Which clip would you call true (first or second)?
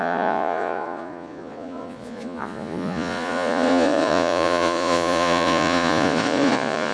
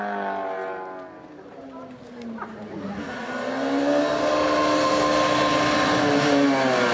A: second